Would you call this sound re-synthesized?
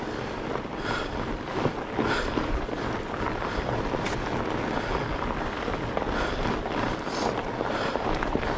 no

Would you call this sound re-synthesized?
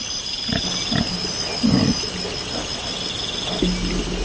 no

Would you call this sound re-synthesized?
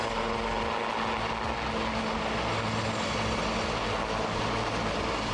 no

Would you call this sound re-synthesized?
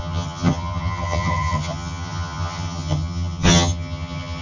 yes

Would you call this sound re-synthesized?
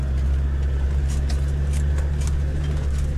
no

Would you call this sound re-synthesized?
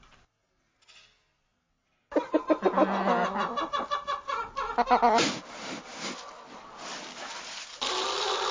no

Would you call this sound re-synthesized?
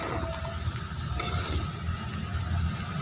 no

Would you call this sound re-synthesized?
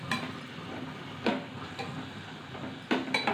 no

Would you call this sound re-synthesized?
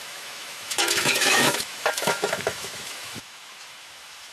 yes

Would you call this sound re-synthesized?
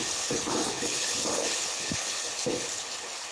yes